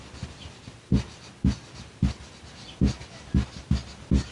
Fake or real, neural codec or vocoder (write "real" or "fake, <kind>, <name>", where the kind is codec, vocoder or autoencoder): real